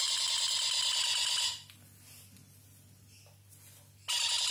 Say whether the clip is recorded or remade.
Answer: recorded